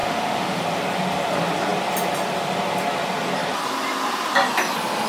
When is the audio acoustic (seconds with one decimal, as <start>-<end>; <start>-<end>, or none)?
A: 0.6-5.1